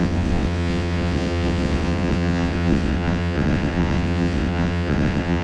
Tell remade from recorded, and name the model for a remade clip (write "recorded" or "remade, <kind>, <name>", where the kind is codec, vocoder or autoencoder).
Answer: remade, vocoder, WaveNeXt